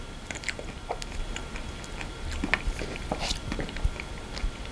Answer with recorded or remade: recorded